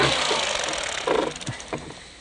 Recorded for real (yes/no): yes